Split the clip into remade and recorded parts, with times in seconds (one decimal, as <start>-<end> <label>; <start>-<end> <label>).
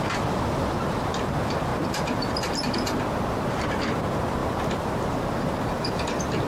0.0-6.5 recorded